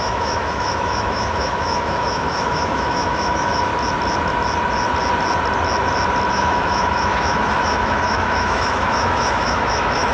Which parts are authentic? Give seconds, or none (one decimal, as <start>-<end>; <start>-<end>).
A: 3.7-6.3